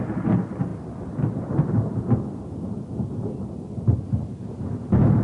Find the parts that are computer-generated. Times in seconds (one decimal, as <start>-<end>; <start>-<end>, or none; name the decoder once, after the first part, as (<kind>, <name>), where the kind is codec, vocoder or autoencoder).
0.7-3.8 (vocoder, BigVGAN v2)